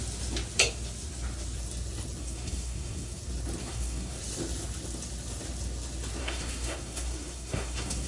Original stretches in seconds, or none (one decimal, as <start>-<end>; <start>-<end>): 0.0-2.2; 3.2-3.6; 4.2-6.2